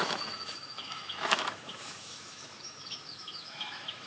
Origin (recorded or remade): remade